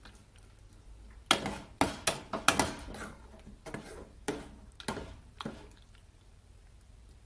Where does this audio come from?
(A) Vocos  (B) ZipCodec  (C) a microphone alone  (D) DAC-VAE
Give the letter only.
C